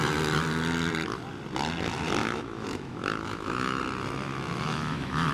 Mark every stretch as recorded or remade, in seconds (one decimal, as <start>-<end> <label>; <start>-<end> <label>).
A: 0.0-2.2 recorded; 2.2-3.8 remade; 3.8-4.3 recorded; 4.3-5.3 remade